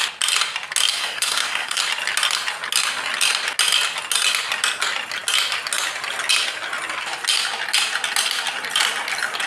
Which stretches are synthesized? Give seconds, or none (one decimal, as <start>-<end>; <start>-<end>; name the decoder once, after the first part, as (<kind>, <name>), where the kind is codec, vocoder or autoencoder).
0.9-1.8 (codec, SNAC)